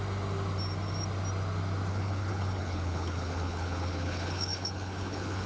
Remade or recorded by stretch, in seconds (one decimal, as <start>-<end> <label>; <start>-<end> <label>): 0.0-1.9 recorded; 1.9-5.5 remade